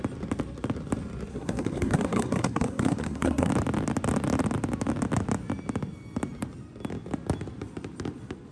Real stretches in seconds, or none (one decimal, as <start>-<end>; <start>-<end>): 0.0-1.3; 3.5-8.5